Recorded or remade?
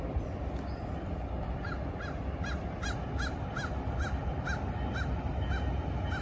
recorded